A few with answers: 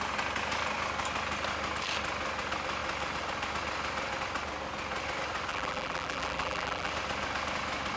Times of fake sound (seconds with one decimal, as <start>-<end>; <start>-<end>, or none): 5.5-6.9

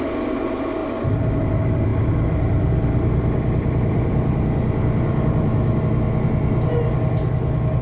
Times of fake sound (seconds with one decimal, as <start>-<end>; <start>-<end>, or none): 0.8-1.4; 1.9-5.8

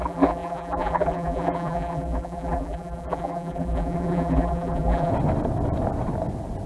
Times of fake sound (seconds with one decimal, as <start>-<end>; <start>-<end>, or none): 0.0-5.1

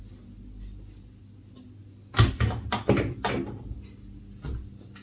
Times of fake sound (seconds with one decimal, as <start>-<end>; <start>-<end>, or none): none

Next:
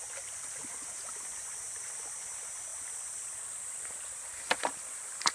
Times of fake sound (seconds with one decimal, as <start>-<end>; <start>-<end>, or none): none

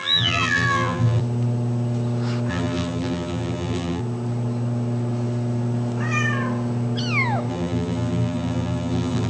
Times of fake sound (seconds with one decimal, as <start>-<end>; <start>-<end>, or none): 0.0-1.2; 2.5-4.0; 7.5-9.3

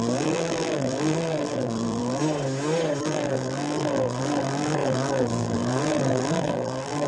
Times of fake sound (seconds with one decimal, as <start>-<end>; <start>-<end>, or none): 0.0-2.2; 3.0-7.1

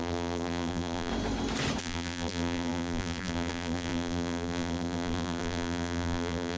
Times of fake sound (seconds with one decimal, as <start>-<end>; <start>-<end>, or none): 0.0-1.1; 1.8-6.6